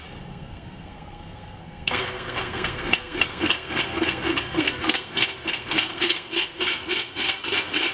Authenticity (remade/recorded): remade